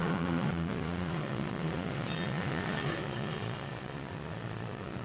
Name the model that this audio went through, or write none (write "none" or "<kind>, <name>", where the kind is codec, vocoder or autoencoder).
vocoder, Vocos